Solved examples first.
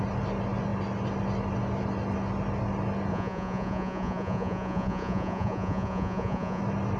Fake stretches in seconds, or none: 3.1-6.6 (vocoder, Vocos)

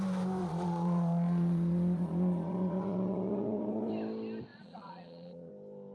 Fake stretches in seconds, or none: 0.4-3.9 (vocoder, Vocos); 4.5-5.5

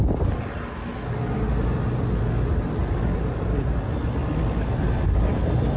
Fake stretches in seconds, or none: none

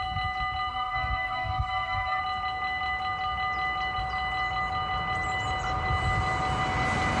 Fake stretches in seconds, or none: 0.7-2.2 (codec, SNAC)

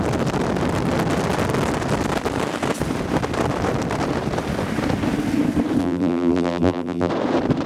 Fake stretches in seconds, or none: 5.8-7.1 (vocoder, BigVGAN v2)